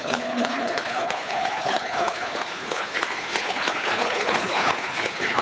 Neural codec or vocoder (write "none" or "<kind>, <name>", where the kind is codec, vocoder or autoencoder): codec, HILCodec